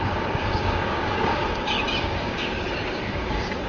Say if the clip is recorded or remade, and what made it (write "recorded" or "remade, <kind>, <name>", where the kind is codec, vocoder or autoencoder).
remade, codec, DAC